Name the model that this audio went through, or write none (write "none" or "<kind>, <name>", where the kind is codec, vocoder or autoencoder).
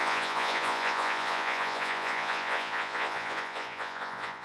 vocoder, Vocos